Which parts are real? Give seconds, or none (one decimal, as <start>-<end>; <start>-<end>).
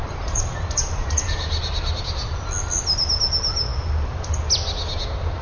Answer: 1.6-5.4